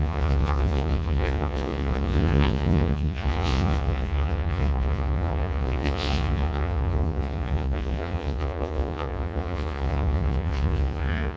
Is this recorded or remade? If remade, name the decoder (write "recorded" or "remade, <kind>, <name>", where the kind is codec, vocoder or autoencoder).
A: remade, vocoder, Vocos